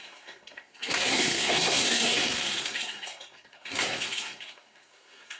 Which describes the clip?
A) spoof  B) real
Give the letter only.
A